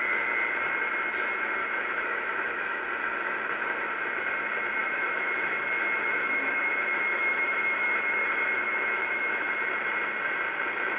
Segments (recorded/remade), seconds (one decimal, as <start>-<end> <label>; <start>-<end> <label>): 0.0-1.6 recorded; 1.6-2.8 remade; 2.8-4.8 recorded; 4.8-9.5 remade; 9.5-11.0 recorded